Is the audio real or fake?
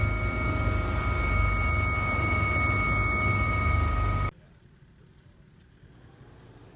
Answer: real